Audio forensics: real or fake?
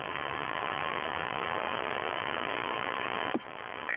fake